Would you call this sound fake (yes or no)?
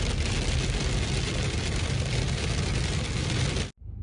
no